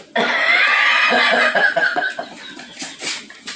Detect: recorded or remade recorded